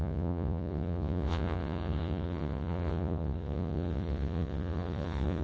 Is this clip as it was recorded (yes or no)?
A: no